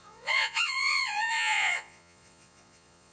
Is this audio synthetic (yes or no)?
yes